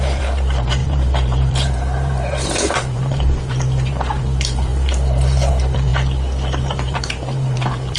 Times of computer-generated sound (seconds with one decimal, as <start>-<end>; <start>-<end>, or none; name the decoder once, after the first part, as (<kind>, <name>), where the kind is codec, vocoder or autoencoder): 0.0-5.9 (vocoder, BigVGAN v2); 6.6-8.0